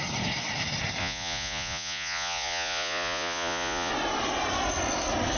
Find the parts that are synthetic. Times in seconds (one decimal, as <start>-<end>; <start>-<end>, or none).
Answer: 1.0-3.9